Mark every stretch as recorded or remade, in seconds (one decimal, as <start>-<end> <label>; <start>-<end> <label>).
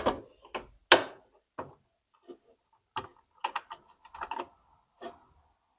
0.0-5.8 recorded